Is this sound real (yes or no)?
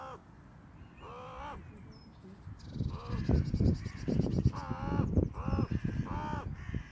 yes